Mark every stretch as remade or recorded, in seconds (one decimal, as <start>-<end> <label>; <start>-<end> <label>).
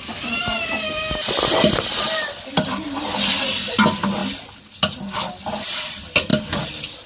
0.0-7.1 recorded